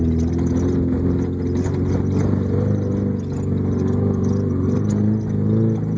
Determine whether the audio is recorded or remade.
recorded